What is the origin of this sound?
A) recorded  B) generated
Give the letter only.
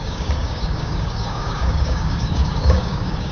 B